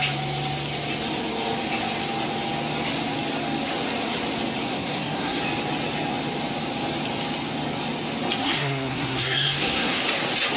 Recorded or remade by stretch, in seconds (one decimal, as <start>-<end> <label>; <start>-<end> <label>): 0.0-4.7 recorded; 4.7-5.4 remade; 5.4-8.4 recorded; 8.4-10.0 remade; 10.0-10.6 recorded